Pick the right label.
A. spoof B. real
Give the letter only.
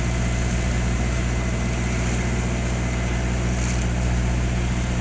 B